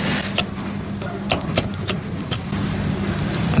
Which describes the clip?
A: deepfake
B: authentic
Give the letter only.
B